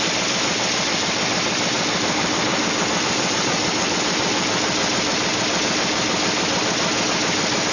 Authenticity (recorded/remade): recorded